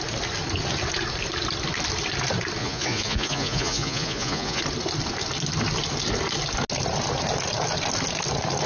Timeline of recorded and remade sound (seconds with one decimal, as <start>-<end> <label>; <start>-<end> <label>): 0.0-2.6 recorded; 2.6-4.6 remade; 4.6-8.7 recorded